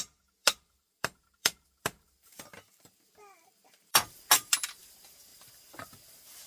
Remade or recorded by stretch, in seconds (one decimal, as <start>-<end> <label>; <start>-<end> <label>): 0.0-0.4 recorded; 0.4-4.3 remade; 4.3-5.3 recorded; 5.3-5.9 remade; 5.9-6.5 recorded